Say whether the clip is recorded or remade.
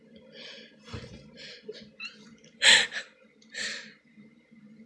remade